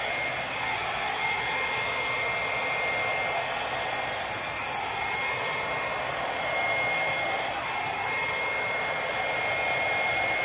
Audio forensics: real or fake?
real